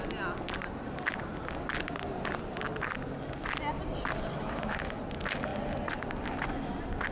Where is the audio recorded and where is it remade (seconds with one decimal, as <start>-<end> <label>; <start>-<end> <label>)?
0.0-4.3 recorded; 4.3-5.0 remade; 5.0-7.1 recorded